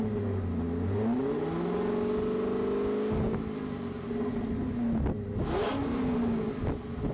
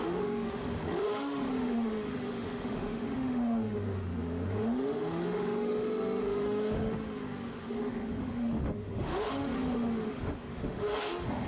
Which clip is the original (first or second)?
first